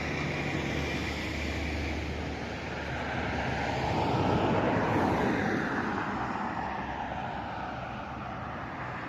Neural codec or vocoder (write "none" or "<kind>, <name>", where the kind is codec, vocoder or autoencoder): none